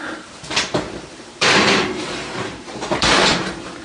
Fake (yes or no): yes